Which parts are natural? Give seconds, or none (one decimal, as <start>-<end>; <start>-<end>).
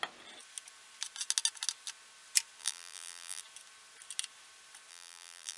0.0-2.6; 3.4-4.9